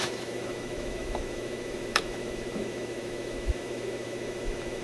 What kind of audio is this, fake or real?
fake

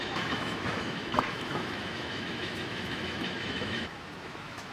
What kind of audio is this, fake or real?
fake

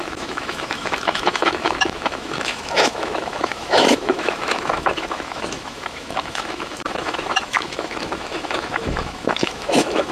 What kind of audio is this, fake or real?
fake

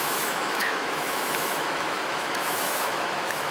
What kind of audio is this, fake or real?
fake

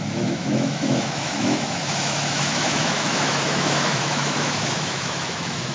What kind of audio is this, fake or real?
fake